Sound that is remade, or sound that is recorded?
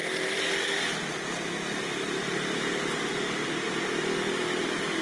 recorded